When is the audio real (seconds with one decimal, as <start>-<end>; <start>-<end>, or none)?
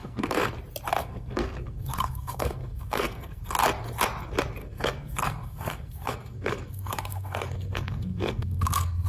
0.5-1.0; 3.5-4.6